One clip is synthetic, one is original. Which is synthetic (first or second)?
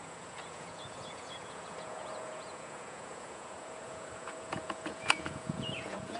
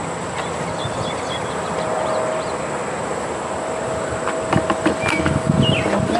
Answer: first